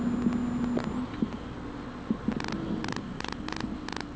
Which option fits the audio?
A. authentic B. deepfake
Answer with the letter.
A